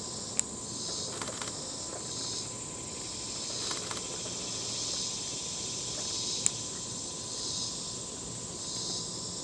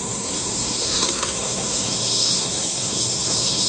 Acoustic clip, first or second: first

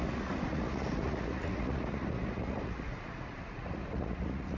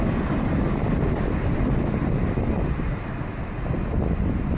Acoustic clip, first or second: second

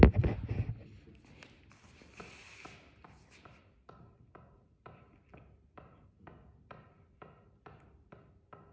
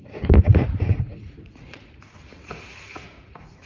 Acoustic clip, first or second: first